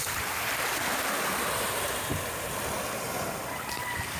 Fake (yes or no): no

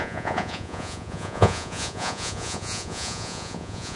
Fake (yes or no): yes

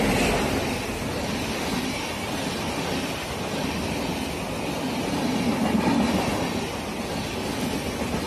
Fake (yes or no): no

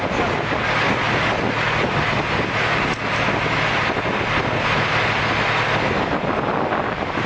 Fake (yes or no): no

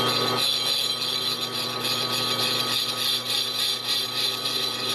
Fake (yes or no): no